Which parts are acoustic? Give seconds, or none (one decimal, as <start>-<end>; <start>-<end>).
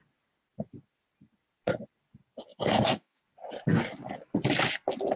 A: 0.0-2.5; 3.2-5.2